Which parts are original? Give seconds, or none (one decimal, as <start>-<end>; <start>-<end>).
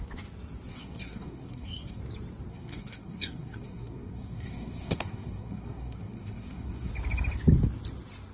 0.0-0.7; 2.0-2.5; 6.9-8.3